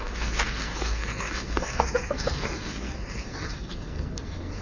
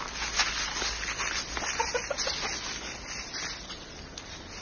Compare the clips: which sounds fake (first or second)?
first